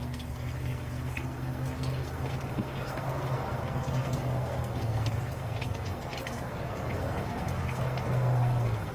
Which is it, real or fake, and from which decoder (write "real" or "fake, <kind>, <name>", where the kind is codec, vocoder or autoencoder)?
fake, codec, SNAC